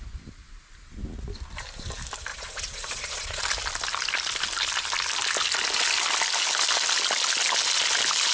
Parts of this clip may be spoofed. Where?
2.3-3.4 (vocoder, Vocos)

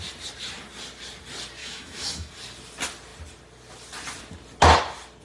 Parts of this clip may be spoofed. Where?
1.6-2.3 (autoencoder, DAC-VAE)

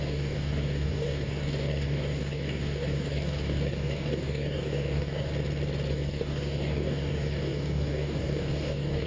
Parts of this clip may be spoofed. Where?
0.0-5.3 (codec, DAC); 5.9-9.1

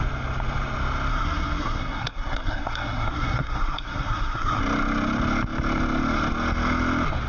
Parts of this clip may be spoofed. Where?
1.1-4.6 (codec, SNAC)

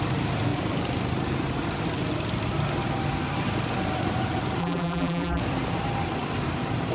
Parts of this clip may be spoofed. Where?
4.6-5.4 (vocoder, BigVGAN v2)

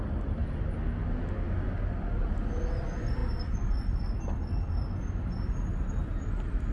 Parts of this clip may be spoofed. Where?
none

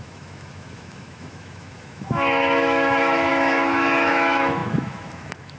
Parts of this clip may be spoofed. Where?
0.0-5.6 (autoencoder, DAC-VAE)

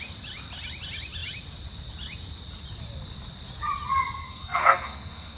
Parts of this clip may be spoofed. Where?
4.2-5.4 (codec, SNAC)